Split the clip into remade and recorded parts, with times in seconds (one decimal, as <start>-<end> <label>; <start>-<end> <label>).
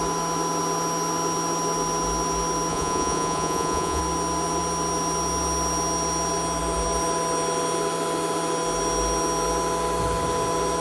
0.0-2.7 recorded; 2.7-4.0 remade; 4.0-10.8 recorded